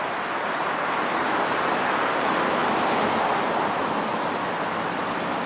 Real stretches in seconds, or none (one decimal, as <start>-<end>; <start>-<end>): 0.0-5.5